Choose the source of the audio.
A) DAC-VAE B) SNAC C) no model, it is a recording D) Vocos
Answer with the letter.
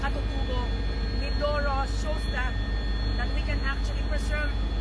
C